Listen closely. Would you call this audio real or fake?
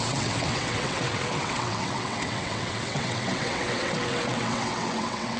fake